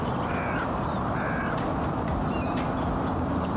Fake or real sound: real